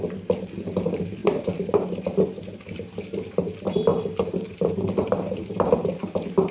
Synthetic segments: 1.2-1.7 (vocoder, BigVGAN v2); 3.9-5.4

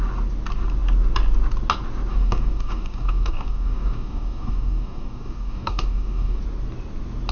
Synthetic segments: 2.1-6.4 (codec, DAC)